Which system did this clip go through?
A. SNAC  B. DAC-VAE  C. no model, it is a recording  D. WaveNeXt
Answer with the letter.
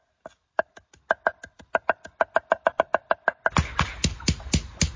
C